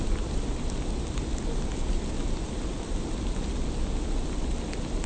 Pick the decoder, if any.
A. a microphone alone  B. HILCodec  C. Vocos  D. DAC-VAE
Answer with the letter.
A